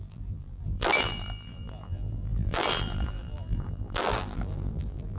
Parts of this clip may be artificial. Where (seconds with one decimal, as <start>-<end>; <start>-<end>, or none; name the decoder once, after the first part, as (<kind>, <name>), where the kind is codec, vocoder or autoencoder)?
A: 0.0-5.2 (vocoder, BigVGAN v2)